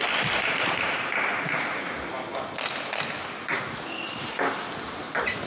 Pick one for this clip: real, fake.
real